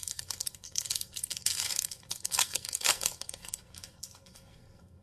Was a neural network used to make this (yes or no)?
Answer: yes